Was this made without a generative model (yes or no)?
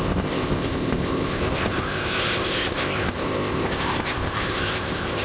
no